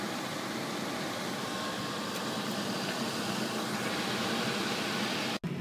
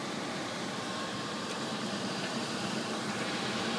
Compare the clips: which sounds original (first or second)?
first